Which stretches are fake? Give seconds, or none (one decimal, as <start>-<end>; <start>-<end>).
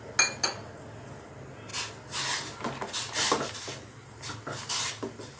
none